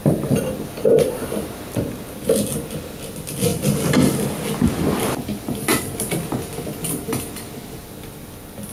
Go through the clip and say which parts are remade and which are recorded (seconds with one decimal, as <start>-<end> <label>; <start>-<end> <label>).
0.0-8.7 recorded